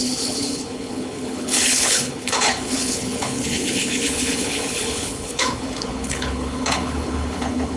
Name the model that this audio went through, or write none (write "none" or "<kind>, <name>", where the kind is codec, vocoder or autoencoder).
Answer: codec, HILCodec